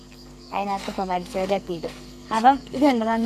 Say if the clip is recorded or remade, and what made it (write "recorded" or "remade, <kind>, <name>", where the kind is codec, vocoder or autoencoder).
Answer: remade, codec, SNAC